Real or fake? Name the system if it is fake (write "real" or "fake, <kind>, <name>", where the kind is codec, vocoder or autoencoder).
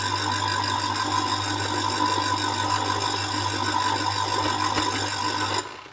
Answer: real